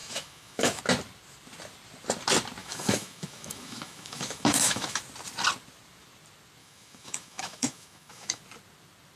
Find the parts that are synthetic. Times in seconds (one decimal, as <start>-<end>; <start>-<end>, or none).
0.0-0.8; 2.6-5.0; 6.6-8.4